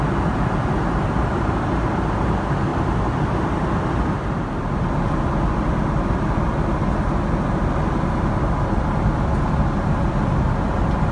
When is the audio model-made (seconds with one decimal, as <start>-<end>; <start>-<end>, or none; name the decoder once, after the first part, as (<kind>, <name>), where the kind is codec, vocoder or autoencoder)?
none